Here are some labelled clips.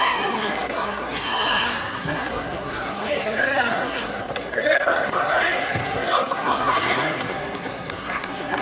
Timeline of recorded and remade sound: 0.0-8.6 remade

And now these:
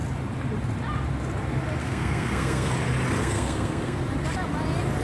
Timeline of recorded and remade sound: 0.0-1.8 recorded; 1.8-2.7 remade; 2.7-3.2 recorded; 3.2-4.0 remade; 4.0-5.0 recorded

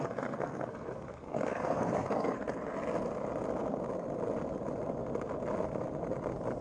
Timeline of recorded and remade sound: 0.0-2.4 remade; 2.4-6.6 recorded

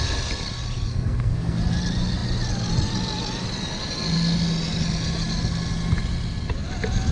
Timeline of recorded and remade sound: 0.0-0.9 recorded; 0.9-1.6 remade; 1.6-7.1 recorded

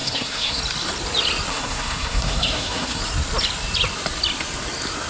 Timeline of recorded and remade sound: 0.0-0.6 remade; 0.6-1.5 recorded; 1.5-3.0 remade; 3.0-5.1 recorded

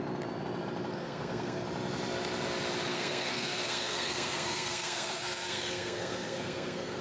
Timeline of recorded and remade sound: 0.0-0.9 recorded; 0.9-1.6 remade; 1.6-2.9 recorded; 2.9-7.0 remade

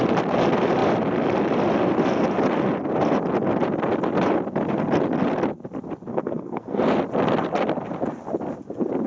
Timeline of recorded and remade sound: 0.0-6.1 recorded; 6.1-6.8 remade; 6.8-9.1 recorded